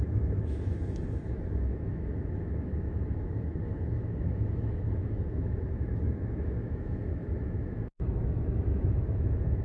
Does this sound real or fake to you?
fake